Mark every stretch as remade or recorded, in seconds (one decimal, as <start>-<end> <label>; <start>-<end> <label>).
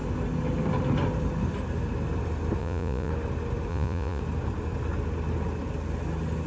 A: 0.0-2.6 recorded; 2.6-3.1 remade; 3.1-3.7 recorded; 3.7-4.2 remade; 4.2-6.5 recorded